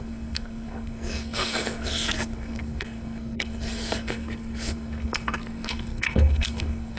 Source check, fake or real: fake